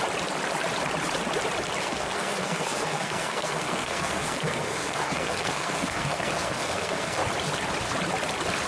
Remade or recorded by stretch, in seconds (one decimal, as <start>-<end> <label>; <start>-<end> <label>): 0.0-1.8 recorded; 1.8-7.2 remade; 7.2-8.7 recorded